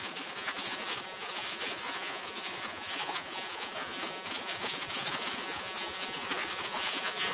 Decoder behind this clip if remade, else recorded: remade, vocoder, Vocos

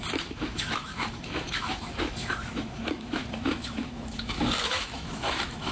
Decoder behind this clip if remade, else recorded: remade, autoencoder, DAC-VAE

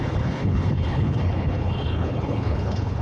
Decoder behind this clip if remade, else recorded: remade, codec, HILCodec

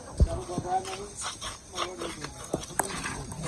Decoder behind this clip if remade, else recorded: recorded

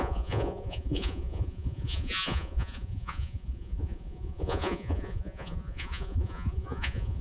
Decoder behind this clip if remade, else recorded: remade, vocoder, Vocos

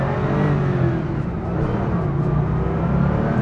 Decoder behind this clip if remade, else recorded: recorded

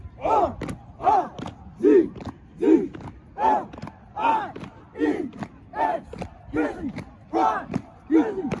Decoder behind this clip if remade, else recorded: recorded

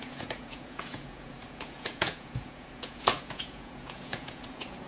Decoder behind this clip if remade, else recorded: remade, vocoder, Vocos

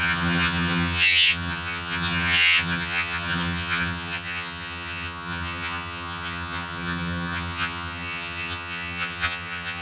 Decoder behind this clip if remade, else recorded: remade, vocoder, HiFi-GAN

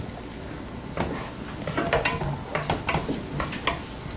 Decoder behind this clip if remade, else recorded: recorded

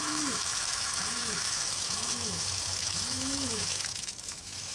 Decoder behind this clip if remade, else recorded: remade, autoencoder, DAC-VAE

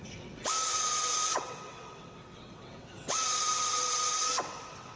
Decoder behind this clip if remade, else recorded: remade, vocoder, WaveNeXt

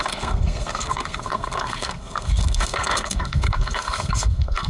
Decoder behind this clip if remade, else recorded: remade, codec, SNAC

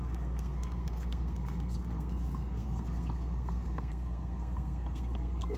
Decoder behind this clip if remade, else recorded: remade, codec, SNAC